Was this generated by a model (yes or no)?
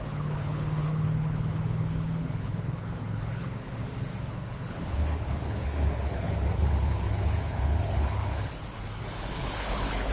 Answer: yes